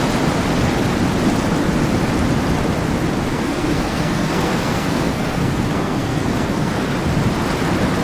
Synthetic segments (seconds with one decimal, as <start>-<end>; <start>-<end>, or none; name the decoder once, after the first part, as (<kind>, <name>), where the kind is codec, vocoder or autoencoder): 3.3-6.7 (codec, SNAC)

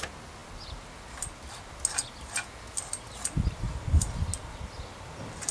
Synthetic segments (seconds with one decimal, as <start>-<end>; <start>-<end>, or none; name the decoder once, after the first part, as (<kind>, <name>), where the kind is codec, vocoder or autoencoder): none